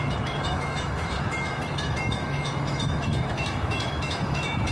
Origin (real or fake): fake